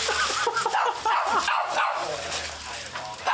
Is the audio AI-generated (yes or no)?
no